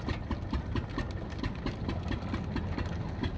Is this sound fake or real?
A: real